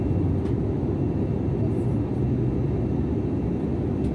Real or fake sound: real